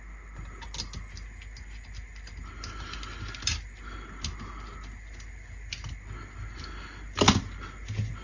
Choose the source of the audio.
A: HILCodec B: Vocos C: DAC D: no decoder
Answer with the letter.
D